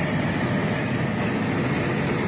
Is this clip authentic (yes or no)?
yes